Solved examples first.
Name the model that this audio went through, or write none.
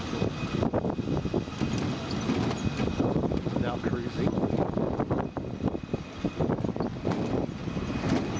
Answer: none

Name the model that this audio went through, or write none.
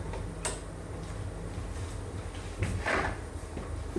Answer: none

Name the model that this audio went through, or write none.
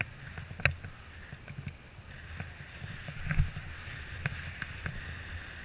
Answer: none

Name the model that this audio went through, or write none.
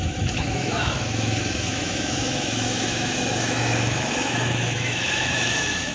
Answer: autoencoder, DAC-VAE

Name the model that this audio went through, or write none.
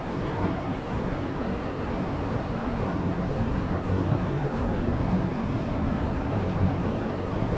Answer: codec, SNAC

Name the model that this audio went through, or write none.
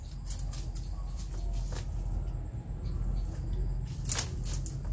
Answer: none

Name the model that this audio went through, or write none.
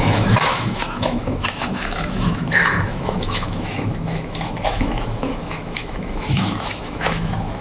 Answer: autoencoder, DAC-VAE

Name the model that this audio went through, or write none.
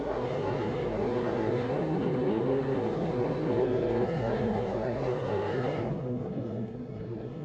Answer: codec, SNAC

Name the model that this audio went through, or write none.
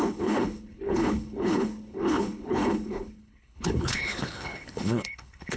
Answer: codec, HILCodec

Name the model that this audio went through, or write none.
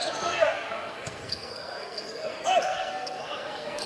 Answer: codec, SNAC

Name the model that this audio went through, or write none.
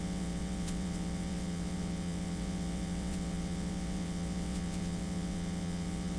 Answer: vocoder, WaveNeXt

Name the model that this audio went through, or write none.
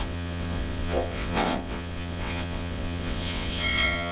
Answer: vocoder, WaveNeXt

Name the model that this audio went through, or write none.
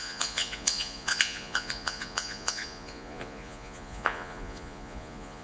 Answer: vocoder, Vocos